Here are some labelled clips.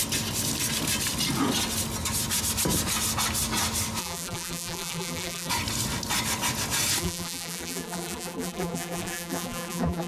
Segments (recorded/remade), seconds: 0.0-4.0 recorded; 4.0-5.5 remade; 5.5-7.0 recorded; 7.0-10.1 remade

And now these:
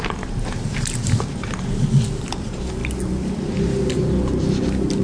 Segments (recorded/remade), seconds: 0.0-5.0 recorded

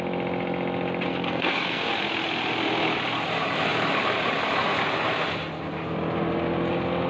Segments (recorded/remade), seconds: 0.0-1.1 recorded; 1.1-2.0 remade; 2.0-7.1 recorded

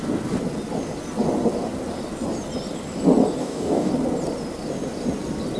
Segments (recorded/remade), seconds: 0.0-3.4 recorded; 3.4-3.9 remade; 3.9-5.6 recorded